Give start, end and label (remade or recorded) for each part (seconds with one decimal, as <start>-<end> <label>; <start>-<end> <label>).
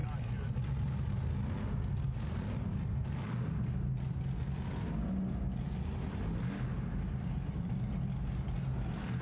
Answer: 0.0-9.2 recorded